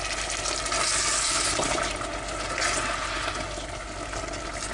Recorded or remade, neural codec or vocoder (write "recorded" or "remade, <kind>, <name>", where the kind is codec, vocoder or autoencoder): recorded